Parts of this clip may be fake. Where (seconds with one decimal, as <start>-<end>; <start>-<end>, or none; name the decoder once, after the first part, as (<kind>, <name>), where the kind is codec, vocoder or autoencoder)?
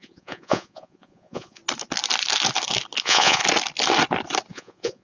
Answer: 0.0-1.6 (vocoder, Vocos); 3.0-3.4; 4.5-5.0